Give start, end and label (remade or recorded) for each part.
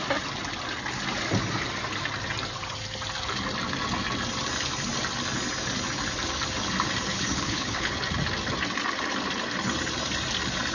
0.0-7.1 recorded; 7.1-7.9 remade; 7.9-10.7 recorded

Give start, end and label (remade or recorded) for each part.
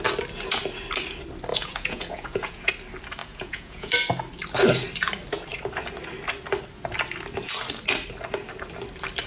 0.0-1.5 recorded; 1.5-2.7 remade; 2.7-3.2 recorded; 3.2-3.9 remade; 3.9-9.3 recorded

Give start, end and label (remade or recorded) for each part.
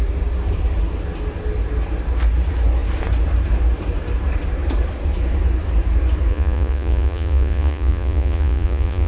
0.0-6.3 recorded; 6.3-9.1 remade